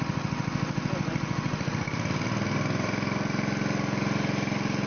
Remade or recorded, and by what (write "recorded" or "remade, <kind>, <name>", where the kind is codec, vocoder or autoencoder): recorded